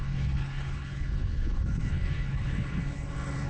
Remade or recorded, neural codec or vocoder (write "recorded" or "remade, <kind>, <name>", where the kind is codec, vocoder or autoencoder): remade, codec, HILCodec